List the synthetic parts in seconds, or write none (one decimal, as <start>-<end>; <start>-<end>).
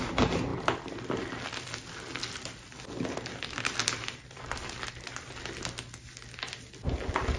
0.5-4.9